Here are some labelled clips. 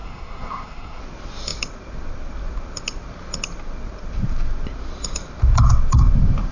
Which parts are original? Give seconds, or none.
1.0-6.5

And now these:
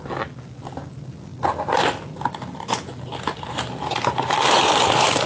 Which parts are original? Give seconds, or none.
0.0-5.3

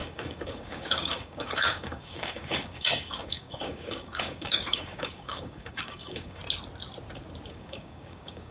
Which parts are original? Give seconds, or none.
6.4-7.5

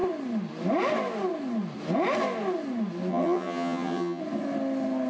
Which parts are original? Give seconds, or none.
0.0-3.1; 4.2-5.1

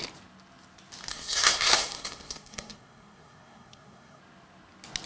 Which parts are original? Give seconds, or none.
0.0-1.1; 4.2-5.1